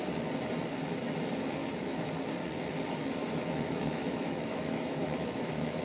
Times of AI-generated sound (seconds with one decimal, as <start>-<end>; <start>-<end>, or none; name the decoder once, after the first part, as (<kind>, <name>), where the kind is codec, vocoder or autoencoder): 1.6-2.1 (autoencoder, DAC-VAE); 3.2-5.8